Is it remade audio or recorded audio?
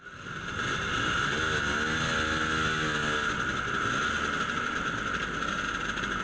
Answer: recorded